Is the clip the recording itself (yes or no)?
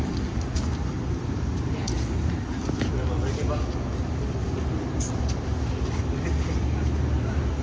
yes